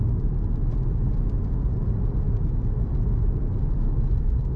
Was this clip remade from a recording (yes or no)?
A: no